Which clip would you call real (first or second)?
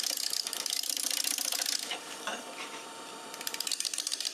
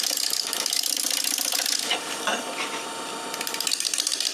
second